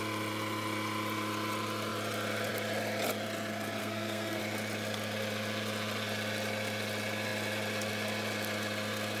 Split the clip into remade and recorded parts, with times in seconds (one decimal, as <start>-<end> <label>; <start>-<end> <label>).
0.0-3.8 recorded; 3.8-4.4 remade; 4.4-9.2 recorded